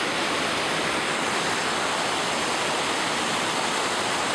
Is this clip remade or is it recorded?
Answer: recorded